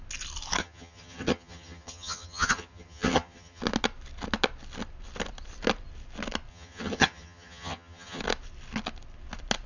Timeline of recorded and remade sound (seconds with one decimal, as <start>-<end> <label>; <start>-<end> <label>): 0.0-0.6 recorded; 0.6-3.6 remade; 3.6-6.5 recorded; 6.5-8.2 remade; 8.2-9.7 recorded